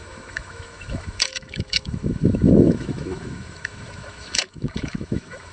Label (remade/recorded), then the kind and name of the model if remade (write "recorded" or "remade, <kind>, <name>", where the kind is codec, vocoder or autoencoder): remade, autoencoder, DAC-VAE